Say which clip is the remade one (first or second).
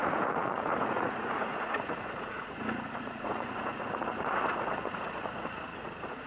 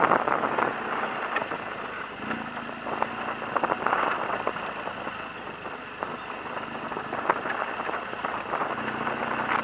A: first